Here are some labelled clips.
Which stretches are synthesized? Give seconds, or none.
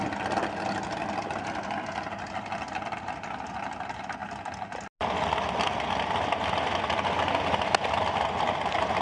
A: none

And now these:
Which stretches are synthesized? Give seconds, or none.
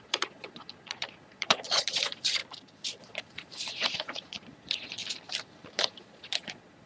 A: 0.0-2.4; 3.0-5.0; 5.7-6.9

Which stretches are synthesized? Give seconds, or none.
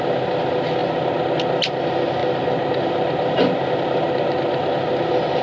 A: none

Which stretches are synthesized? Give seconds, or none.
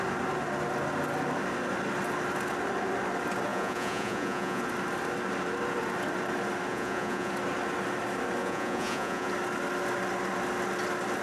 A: 3.5-4.6; 6.7-7.3; 8.4-9.3